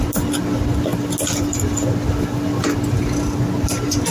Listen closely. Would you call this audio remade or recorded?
recorded